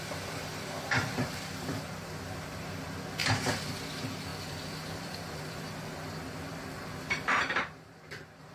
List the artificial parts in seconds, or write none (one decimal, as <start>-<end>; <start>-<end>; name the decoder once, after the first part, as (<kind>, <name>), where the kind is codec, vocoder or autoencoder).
0.0-3.2 (vocoder, BigVGAN v2); 3.9-8.5